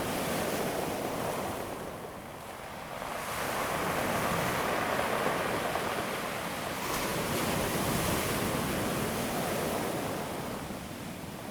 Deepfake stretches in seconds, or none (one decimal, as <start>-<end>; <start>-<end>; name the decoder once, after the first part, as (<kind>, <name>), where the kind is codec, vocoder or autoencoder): none